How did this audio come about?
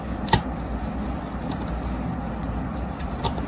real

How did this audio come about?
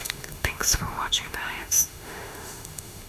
fake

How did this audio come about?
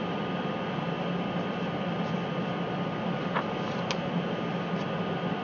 real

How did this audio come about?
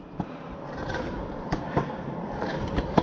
fake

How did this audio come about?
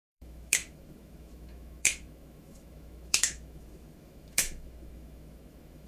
fake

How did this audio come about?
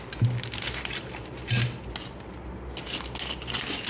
real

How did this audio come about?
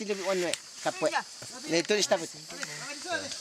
real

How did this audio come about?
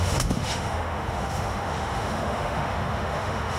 fake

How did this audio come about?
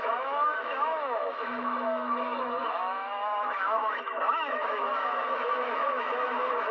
fake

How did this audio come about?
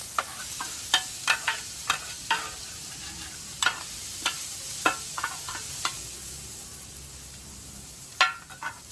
fake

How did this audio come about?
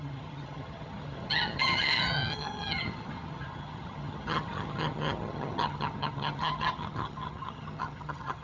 fake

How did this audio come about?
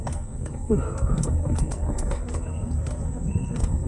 fake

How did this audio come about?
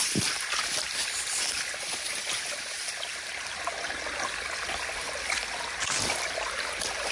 real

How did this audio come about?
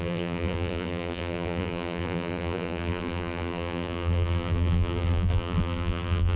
fake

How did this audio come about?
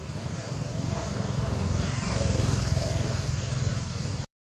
fake